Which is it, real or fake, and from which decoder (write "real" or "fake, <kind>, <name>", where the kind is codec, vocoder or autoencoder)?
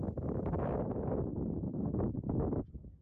fake, autoencoder, DAC-VAE